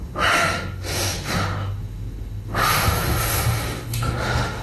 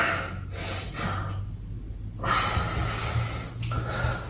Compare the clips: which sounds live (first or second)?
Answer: second